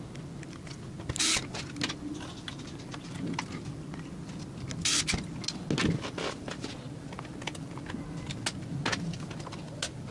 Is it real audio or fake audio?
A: real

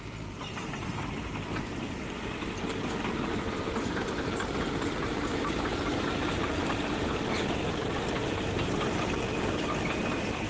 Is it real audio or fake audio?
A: fake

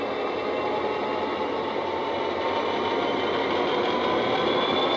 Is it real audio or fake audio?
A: real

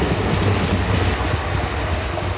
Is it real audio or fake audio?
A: real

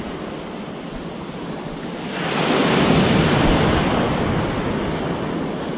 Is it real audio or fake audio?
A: real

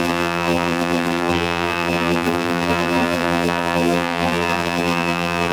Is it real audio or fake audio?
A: fake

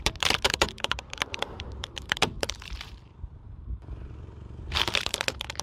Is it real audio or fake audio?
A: fake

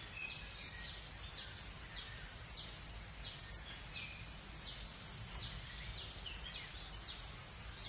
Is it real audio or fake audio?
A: real